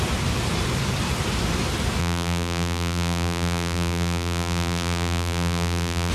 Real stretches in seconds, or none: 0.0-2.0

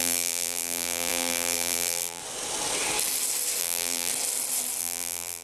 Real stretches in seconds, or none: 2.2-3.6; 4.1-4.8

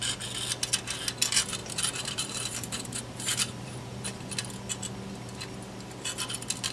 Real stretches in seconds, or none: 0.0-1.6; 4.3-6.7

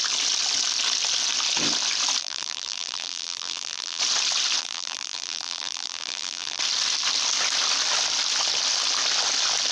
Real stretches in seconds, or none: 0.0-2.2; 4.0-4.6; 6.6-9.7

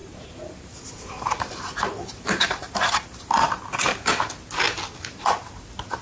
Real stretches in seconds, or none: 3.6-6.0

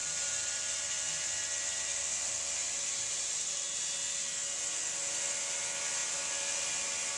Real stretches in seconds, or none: 0.0-2.6; 3.3-7.2